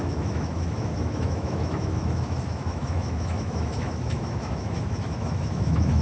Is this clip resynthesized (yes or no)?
yes